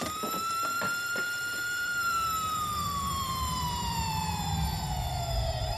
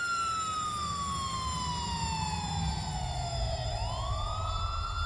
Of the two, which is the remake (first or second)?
first